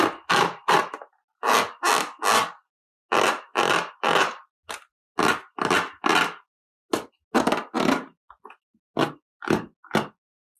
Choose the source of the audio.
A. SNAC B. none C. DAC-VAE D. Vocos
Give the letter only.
B